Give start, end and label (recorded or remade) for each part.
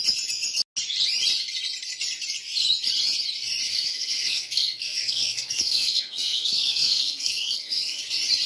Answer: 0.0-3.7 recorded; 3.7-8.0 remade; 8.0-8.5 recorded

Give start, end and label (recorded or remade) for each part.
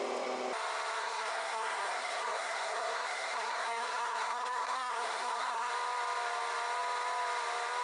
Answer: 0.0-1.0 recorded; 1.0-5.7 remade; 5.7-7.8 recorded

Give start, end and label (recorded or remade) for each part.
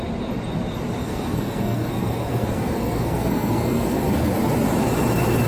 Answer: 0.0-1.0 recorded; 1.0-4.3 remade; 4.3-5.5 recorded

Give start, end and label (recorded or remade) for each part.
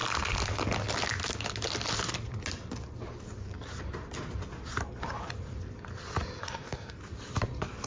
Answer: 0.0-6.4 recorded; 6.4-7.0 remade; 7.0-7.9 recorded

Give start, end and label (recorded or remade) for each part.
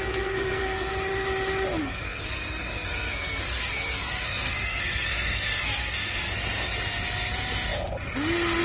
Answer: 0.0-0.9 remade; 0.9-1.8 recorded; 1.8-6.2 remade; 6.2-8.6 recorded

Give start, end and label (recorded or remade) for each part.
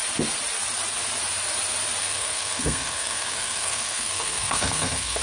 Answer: 0.0-2.0 recorded; 2.0-5.2 remade